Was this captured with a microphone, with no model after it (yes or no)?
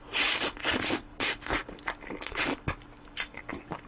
yes